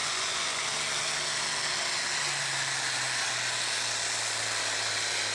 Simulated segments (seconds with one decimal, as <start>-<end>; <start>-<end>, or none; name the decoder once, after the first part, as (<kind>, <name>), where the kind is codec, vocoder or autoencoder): 0.0-0.7 (vocoder, Vocos)

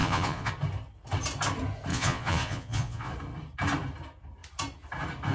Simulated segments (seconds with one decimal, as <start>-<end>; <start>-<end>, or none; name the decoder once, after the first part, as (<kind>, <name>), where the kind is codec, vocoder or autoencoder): 0.0-0.5 (vocoder, Vocos); 1.9-3.1

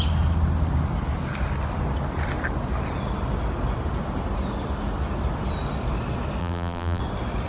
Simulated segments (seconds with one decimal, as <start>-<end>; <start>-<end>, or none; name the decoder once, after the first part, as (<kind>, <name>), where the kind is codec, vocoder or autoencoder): 6.4-7.0 (vocoder, BigVGAN v2)

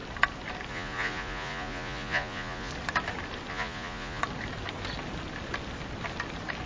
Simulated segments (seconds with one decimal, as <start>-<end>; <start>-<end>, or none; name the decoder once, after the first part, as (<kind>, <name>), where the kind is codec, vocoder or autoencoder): 0.7-2.7 (vocoder, Vocos); 3.5-4.2

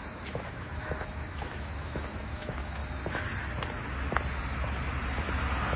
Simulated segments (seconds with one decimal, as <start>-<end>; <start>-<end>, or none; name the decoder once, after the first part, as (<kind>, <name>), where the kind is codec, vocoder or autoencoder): 0.0-2.8 (autoencoder, DAC-VAE)

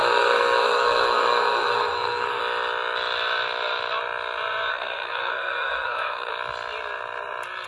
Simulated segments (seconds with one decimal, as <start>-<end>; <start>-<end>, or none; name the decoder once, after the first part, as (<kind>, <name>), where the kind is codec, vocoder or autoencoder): 0.0-2.4 (codec, SNAC); 4.7-6.3

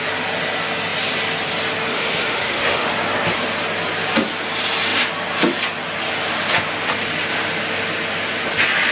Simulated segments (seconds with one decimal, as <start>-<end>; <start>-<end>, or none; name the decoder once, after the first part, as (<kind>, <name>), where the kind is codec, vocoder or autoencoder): 1.9-2.9 (autoencoder, DAC-VAE)